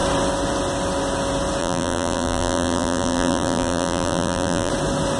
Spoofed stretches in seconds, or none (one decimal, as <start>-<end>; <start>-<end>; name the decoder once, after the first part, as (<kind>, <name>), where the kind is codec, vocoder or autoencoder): 1.6-4.7 (vocoder, BigVGAN v2)